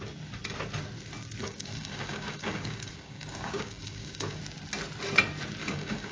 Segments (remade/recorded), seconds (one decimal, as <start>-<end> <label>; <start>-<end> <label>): 0.0-1.4 recorded; 1.4-4.4 remade; 4.4-5.6 recorded; 5.6-6.1 remade